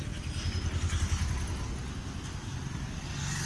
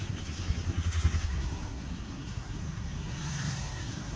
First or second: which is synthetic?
second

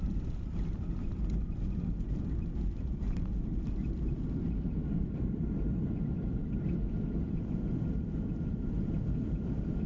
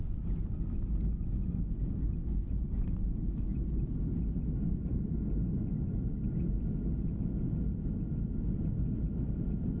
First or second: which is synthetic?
first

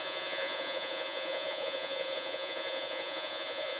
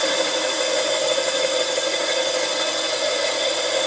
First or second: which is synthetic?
first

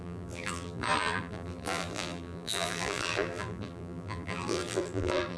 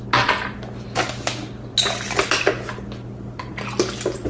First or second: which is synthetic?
first